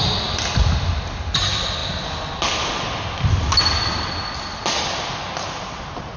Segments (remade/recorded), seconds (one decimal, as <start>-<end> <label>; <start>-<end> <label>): 0.0-6.2 recorded